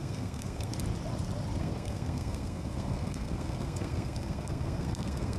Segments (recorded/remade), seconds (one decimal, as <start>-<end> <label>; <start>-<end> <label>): 0.0-0.7 remade; 0.7-1.6 recorded; 1.6-5.4 remade